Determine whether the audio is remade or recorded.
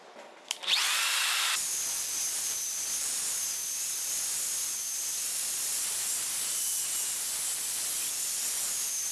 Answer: recorded